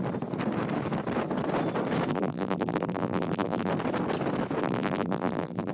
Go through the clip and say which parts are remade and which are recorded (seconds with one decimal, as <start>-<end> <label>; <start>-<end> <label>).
0.0-2.1 recorded; 2.1-3.7 remade; 3.7-4.6 recorded; 4.6-5.7 remade